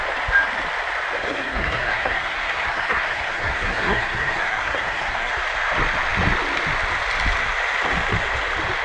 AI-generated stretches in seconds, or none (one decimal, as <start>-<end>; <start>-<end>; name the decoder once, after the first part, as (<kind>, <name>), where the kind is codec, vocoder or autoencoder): 1.2-5.3 (codec, SNAC)